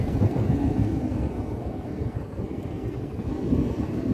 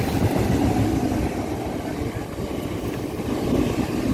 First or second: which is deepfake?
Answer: first